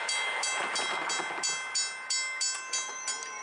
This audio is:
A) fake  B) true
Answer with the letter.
B